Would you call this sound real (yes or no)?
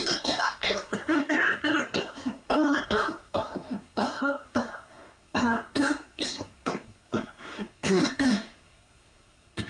no